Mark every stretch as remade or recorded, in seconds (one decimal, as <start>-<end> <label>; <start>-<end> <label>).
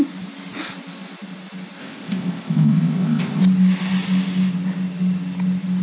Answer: 0.0-1.8 recorded; 1.8-3.4 remade; 3.4-5.8 recorded